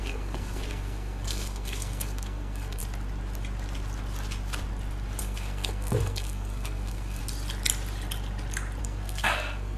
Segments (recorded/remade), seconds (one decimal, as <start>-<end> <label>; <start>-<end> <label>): 0.0-2.8 remade; 2.8-5.2 recorded; 5.2-7.2 remade; 7.2-8.8 recorded; 8.8-9.8 remade